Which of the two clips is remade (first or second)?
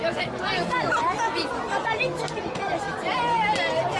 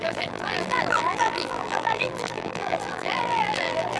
second